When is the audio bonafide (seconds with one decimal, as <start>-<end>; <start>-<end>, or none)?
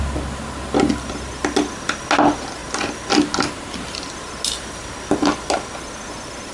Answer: 0.0-6.5